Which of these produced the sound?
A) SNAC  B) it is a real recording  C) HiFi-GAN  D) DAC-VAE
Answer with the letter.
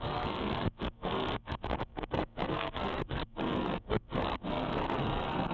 A